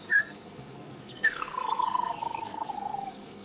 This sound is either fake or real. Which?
fake